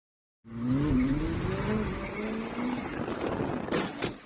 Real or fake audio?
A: real